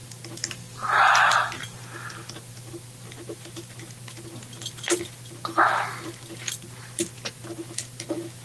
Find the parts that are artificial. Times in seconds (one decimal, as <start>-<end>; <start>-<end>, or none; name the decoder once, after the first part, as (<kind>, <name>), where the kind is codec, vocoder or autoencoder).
none